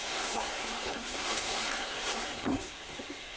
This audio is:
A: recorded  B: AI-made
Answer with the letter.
B